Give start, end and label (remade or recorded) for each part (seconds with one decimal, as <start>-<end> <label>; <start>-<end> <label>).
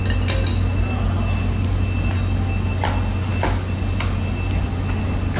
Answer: 0.0-5.4 recorded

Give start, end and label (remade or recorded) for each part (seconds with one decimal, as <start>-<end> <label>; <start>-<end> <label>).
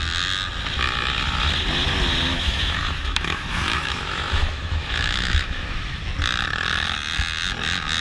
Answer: 0.0-2.3 recorded; 2.3-6.0 remade; 6.0-8.0 recorded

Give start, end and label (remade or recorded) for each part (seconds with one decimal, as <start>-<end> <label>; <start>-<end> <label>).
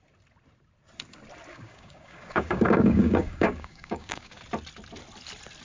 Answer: 0.0-1.5 recorded; 1.5-4.4 remade; 4.4-5.6 recorded